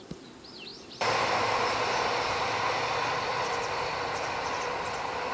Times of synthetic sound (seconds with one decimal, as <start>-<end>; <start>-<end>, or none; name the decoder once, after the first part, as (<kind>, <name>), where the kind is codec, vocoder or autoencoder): none